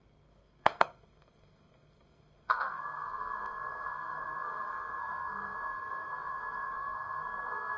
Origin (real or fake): fake